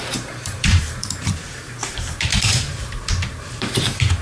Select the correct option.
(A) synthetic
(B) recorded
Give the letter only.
A